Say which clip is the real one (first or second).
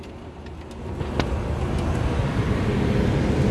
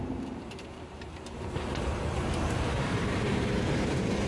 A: first